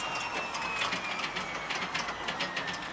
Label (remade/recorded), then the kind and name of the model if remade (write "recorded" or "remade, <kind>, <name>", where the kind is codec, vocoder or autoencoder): recorded